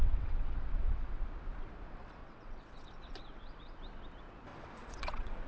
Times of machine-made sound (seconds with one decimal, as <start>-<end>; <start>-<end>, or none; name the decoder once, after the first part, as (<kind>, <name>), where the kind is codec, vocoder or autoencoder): 0.0-1.2 (vocoder, WaveNeXt); 2.2-3.8; 4.5-5.5